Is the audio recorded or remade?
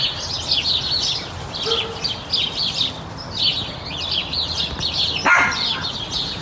recorded